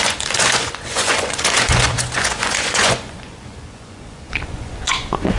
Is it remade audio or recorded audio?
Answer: remade